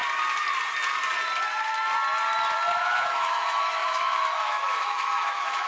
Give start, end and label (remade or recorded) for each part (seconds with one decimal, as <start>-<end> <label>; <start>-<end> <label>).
0.0-2.8 recorded; 2.8-5.7 remade

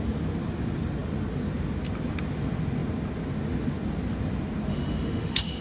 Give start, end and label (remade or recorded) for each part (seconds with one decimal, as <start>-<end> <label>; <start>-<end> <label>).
0.0-4.7 recorded; 4.7-5.6 remade